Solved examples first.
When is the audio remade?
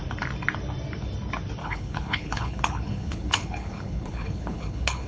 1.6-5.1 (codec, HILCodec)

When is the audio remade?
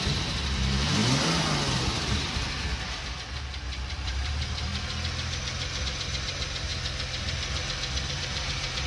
0.0-1.0 (vocoder, BigVGAN v2); 3.9-4.7; 5.8-6.7; 8.1-8.9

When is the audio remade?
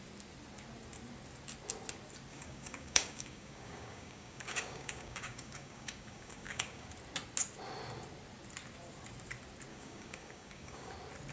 2.3-6.9 (codec, DAC); 9.7-10.9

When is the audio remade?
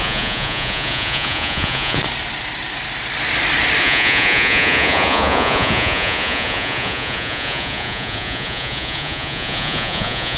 0.0-2.0 (vocoder, Vocos); 3.8-10.4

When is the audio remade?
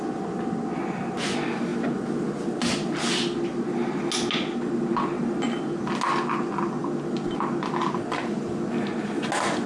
none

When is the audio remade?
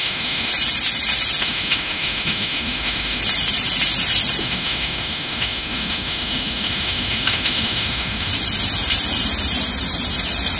0.0-0.5 (autoencoder, DAC-VAE); 1.4-3.2; 4.4-8.3